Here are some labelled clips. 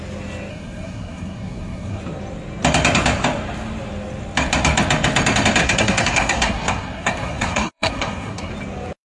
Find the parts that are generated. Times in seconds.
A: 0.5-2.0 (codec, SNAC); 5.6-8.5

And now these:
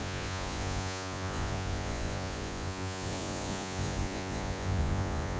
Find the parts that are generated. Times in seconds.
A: 0.0-5.4 (vocoder, Vocos)

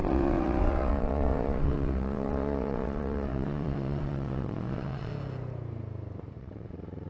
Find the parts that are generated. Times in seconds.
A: 0.0-5.1 (vocoder, WaveNeXt); 6.4-7.1

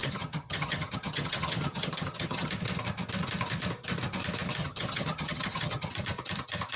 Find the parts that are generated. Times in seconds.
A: 0.0-2.5 (vocoder, HiFi-GAN); 4.6-5.9